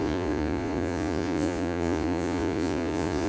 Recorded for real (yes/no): no